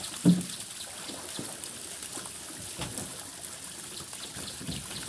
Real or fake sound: real